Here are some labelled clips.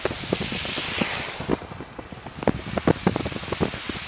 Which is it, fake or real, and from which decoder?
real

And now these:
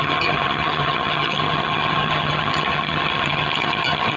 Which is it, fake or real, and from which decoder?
fake, vocoder, HiFi-GAN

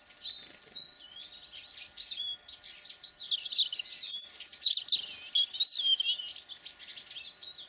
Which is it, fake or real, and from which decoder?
real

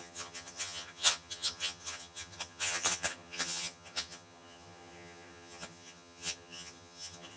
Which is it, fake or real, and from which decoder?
fake, vocoder, HiFi-GAN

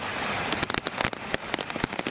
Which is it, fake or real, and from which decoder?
real